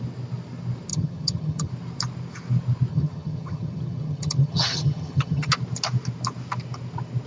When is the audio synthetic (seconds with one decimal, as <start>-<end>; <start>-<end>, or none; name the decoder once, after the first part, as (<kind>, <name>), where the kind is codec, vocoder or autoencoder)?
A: 0.9-1.7 (vocoder, HiFi-GAN); 2.9-5.5